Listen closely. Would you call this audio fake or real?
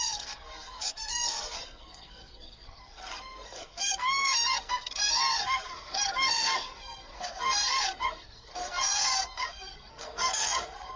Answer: fake